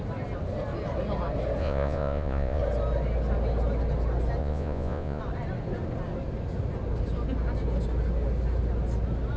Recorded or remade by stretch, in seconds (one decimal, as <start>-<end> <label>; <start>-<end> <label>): 0.0-1.6 recorded; 1.6-2.6 remade; 2.6-4.4 recorded; 4.4-5.2 remade; 5.2-9.4 recorded